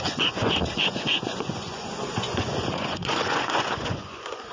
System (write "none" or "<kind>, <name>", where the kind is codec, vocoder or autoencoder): vocoder, Vocos